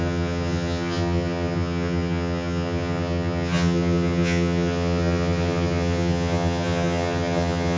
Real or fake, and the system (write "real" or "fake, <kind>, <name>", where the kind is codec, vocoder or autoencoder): fake, vocoder, HiFi-GAN